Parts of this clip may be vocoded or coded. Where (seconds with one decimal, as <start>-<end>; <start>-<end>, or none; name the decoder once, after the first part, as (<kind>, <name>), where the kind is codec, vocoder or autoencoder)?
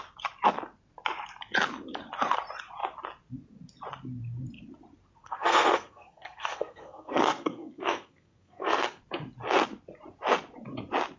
5.2-9.0 (codec, SNAC)